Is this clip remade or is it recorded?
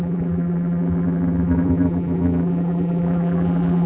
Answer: remade